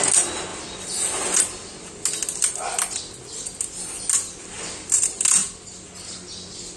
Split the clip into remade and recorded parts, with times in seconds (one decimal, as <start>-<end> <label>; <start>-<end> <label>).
0.0-6.8 recorded